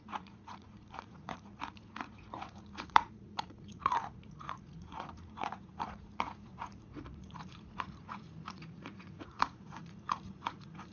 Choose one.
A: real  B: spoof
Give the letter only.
B